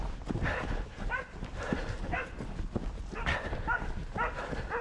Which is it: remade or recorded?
recorded